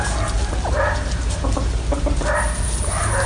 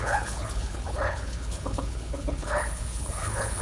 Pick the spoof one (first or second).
second